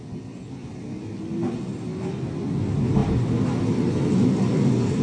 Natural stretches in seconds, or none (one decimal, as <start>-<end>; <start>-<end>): 0.0-5.0